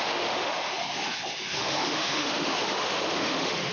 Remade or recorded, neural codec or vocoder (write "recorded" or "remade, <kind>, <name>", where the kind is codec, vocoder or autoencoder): remade, autoencoder, DAC-VAE